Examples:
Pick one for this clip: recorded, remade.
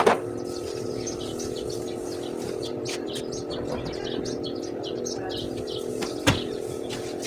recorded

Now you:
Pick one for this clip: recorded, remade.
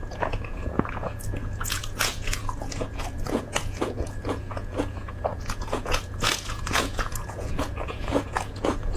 remade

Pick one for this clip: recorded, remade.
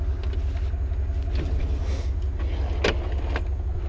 recorded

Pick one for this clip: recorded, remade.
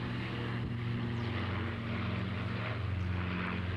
recorded